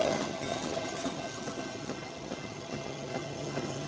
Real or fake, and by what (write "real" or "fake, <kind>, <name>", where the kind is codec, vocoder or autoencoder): fake, vocoder, HiFi-GAN